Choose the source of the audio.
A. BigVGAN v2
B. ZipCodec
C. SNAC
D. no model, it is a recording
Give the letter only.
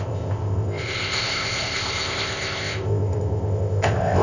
B